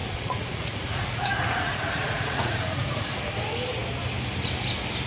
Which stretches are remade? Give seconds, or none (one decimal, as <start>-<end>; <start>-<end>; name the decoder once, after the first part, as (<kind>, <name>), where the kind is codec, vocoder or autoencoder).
0.0-3.1 (vocoder, Vocos)